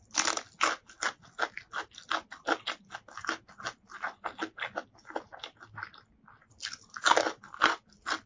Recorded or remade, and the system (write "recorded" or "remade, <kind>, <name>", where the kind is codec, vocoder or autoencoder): recorded